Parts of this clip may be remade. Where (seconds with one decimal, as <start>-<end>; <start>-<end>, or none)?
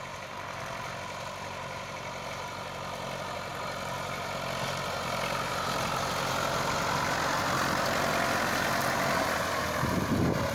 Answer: none